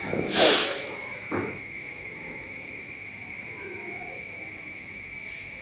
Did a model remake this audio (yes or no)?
yes